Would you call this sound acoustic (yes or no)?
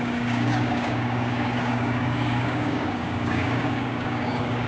no